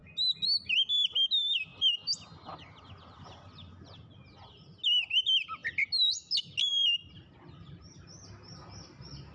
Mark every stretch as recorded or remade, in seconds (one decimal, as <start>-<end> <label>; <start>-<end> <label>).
0.0-9.3 recorded